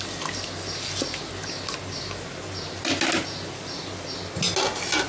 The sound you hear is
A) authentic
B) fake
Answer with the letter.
A